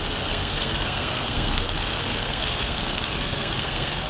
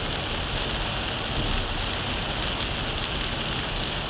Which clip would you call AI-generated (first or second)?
first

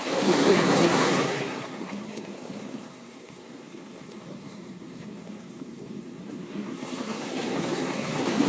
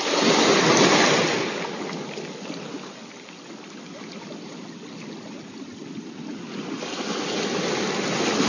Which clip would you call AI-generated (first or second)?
first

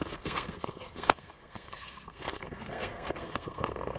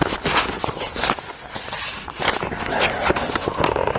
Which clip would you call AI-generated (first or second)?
first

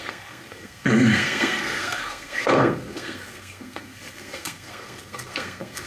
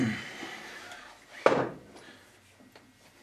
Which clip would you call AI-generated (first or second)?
first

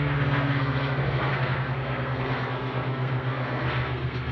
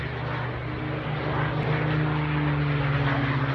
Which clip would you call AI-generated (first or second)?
first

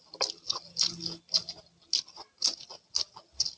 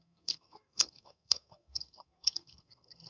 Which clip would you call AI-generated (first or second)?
second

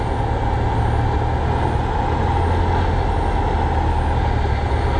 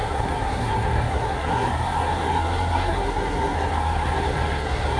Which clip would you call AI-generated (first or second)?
second